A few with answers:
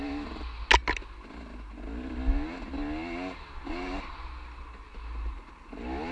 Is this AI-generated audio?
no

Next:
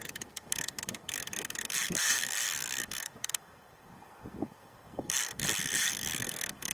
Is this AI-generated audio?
yes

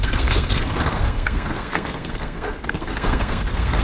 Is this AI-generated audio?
yes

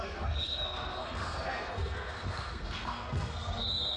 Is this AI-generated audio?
yes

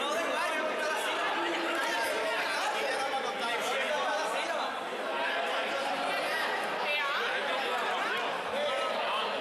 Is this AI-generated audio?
no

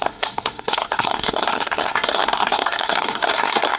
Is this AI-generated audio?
yes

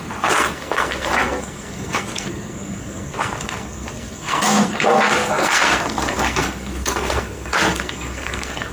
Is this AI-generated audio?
yes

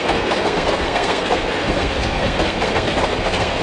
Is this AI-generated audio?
yes